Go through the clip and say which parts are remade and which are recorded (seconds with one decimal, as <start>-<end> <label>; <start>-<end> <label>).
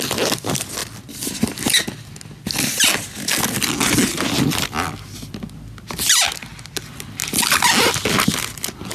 0.0-8.9 recorded